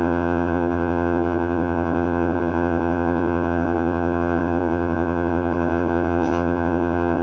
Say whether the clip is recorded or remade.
remade